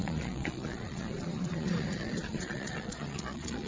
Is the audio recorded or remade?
remade